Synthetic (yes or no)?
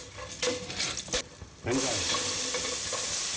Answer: no